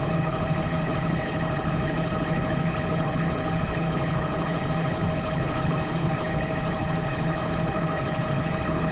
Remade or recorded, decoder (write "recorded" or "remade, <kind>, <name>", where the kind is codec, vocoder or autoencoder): remade, codec, HILCodec